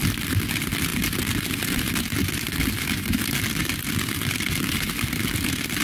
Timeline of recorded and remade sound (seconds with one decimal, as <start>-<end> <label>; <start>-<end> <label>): 0.0-5.8 recorded